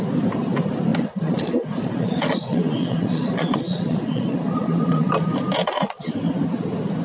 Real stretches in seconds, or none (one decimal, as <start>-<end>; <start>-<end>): 0.0-0.9; 5.1-5.6; 6.1-7.0